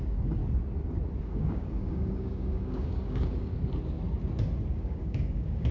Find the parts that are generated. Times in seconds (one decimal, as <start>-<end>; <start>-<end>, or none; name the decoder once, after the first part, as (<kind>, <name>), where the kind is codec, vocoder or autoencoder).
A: 0.0-0.4 (codec, DAC); 1.2-3.5; 4.7-5.7